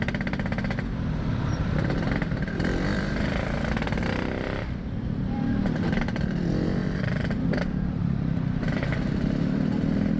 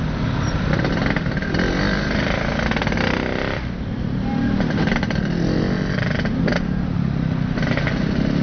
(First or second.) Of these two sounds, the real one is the second